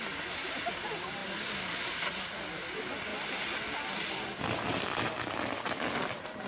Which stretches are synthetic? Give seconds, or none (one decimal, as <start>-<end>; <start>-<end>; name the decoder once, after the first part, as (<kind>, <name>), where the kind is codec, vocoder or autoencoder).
none